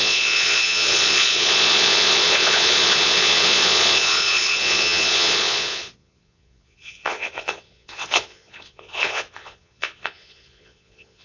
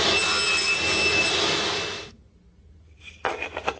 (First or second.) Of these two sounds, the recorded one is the second